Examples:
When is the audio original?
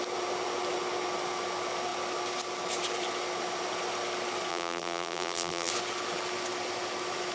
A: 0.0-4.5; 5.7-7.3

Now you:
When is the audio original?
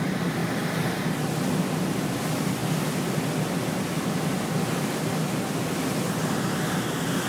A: 0.0-0.4; 2.2-7.3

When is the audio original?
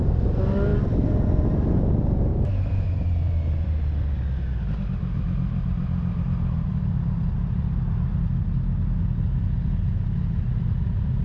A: 0.0-2.3; 3.0-11.2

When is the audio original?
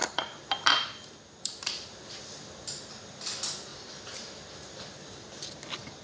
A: 2.2-6.0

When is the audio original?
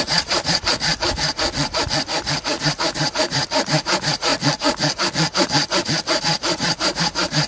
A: 0.9-2.6; 4.3-6.2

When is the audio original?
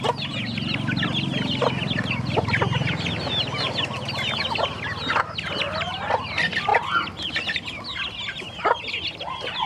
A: 0.0-9.7